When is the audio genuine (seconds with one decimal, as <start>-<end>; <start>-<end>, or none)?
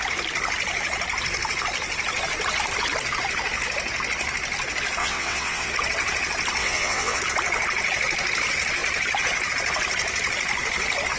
0.0-5.0; 5.7-6.6; 7.2-11.2